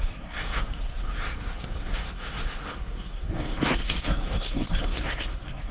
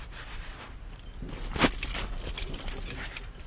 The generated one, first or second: first